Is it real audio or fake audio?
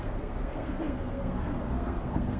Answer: fake